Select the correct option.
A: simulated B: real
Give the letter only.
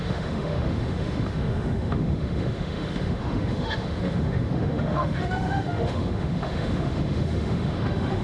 A